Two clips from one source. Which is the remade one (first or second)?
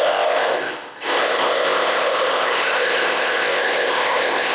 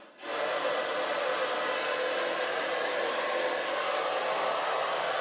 first